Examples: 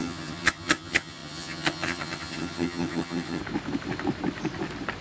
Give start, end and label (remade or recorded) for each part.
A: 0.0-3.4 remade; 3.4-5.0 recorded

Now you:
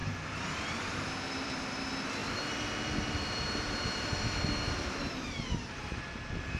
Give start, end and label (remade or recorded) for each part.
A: 0.0-1.8 remade; 1.8-2.2 recorded; 2.2-5.7 remade; 5.7-6.6 recorded

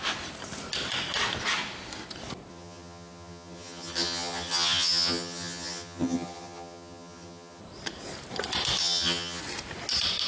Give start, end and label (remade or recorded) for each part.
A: 0.0-2.5 recorded; 2.5-7.6 remade; 7.6-8.8 recorded; 8.8-9.4 remade; 9.4-10.3 recorded

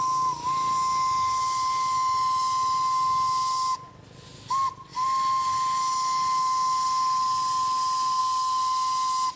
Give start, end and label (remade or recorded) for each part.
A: 0.0-9.4 recorded

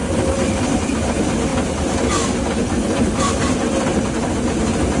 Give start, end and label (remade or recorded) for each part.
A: 0.0-0.5 remade; 0.5-1.5 recorded; 1.5-4.1 remade; 4.1-5.0 recorded

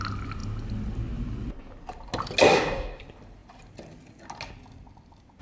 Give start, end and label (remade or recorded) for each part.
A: 0.0-2.5 recorded; 2.5-3.0 remade; 3.0-5.4 recorded

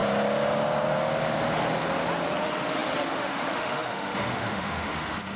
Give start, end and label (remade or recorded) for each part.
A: 0.0-2.4 recorded; 2.4-5.4 remade